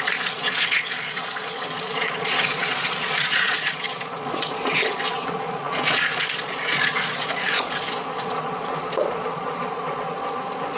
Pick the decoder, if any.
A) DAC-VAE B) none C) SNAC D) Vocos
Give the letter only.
D